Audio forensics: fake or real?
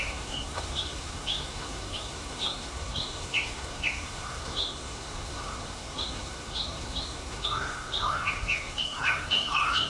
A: fake